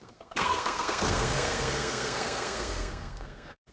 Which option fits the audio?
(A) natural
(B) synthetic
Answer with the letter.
B